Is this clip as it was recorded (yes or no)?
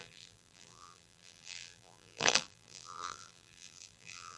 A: no